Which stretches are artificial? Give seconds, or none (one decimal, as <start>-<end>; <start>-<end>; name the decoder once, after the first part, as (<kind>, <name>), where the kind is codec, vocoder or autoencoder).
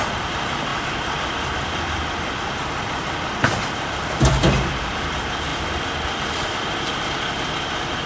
0.0-5.5 (vocoder, BigVGAN v2)